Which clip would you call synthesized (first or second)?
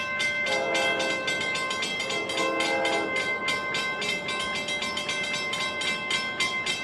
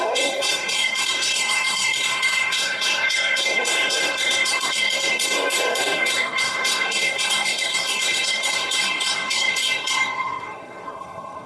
second